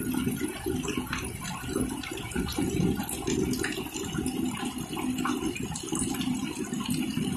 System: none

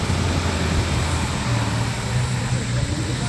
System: none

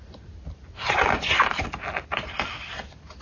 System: none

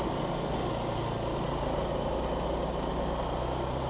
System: none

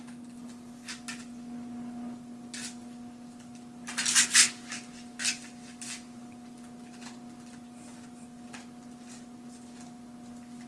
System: none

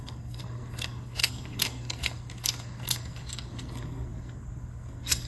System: codec, SNAC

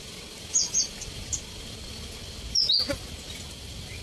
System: none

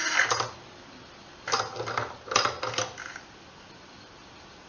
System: none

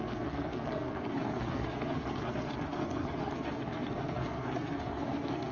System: codec, SNAC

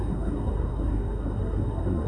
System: codec, SNAC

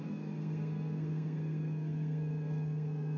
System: codec, SNAC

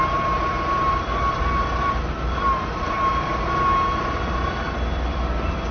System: none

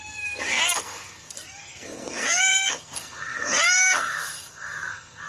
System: codec, SNAC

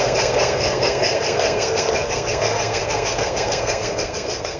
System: codec, SNAC